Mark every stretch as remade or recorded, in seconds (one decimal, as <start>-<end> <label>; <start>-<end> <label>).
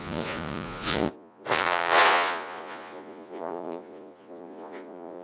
0.0-5.2 remade